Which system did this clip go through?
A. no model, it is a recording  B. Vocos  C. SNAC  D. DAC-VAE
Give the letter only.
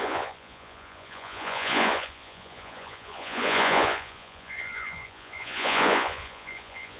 B